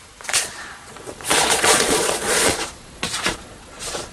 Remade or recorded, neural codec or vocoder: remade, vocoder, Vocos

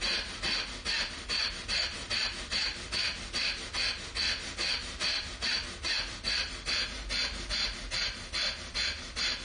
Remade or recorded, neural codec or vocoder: recorded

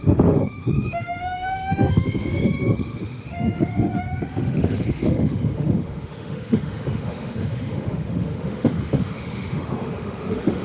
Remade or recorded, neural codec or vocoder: remade, autoencoder, DAC-VAE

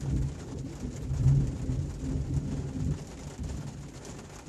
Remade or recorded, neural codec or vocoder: recorded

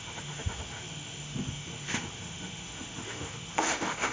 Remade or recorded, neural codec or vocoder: remade, autoencoder, DAC-VAE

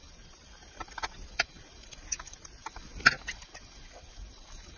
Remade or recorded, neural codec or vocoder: recorded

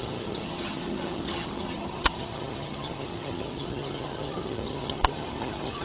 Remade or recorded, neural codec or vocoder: remade, vocoder, HiFi-GAN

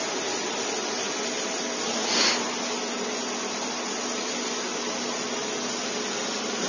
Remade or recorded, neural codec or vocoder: recorded